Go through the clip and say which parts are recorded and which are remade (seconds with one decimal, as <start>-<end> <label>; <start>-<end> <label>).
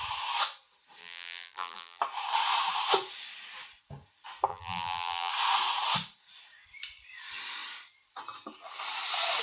0.0-1.0 recorded; 1.0-2.0 remade; 2.0-4.5 recorded; 4.5-5.3 remade; 5.3-9.4 recorded